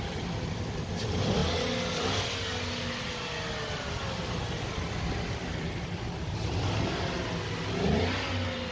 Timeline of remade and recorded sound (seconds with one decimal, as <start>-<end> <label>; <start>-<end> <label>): 0.0-8.7 recorded